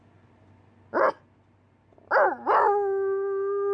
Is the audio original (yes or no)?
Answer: yes